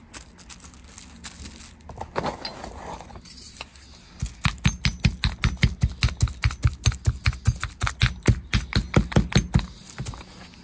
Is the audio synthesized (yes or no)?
no